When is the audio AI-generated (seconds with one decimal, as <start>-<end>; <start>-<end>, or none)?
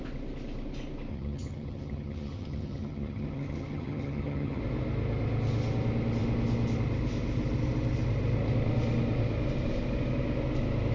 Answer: 1.1-4.6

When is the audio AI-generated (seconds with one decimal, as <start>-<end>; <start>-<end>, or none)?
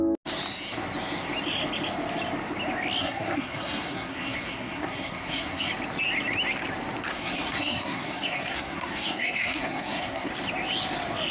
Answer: 3.0-5.7; 7.1-10.3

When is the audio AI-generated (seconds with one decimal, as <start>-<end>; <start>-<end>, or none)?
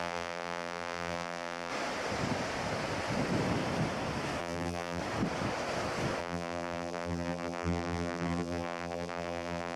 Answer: 0.0-1.7; 4.4-5.0; 6.2-9.8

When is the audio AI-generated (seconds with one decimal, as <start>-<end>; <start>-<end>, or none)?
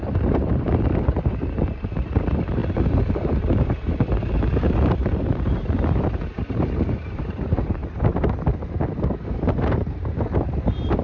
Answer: 0.0-8.5; 9.0-11.0